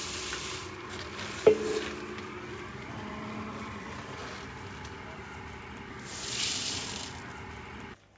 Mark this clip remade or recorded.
recorded